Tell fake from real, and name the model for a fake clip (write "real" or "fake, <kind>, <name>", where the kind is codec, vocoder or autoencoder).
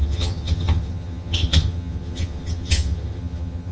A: fake, vocoder, HiFi-GAN